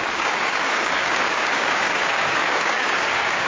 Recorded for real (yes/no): no